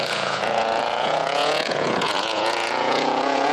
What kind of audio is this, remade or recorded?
remade